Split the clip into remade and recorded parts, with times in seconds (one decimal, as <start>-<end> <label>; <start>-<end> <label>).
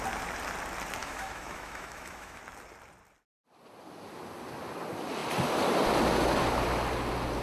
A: 0.0-1.0 recorded; 1.0-2.4 remade; 2.4-7.4 recorded